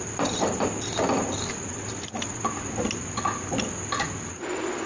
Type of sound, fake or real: real